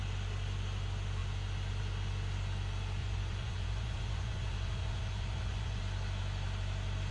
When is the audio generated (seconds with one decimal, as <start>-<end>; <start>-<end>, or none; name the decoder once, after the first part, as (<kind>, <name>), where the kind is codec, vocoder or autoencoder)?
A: 3.0-5.8 (vocoder, Vocos)

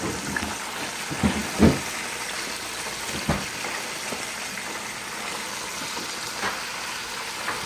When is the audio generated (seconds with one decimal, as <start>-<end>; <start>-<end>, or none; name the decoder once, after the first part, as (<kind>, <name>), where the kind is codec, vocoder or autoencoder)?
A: none

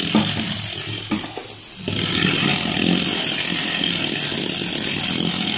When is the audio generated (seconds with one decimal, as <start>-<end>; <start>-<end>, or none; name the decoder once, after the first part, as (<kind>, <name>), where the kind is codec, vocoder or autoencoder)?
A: 0.0-1.4 (vocoder, BigVGAN v2); 2.0-2.5; 5.0-5.6